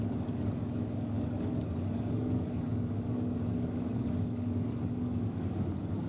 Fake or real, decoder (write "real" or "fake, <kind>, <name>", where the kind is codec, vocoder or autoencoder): fake, codec, DAC